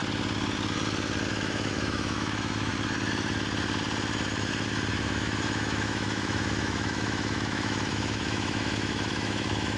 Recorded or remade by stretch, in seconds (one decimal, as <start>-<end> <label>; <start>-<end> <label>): 0.0-1.3 recorded; 1.3-2.7 remade; 2.7-4.9 recorded; 4.9-9.8 remade